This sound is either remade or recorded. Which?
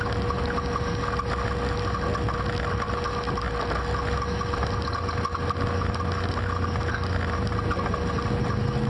recorded